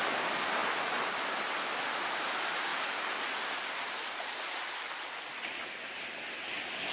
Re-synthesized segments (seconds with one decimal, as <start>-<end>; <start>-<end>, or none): none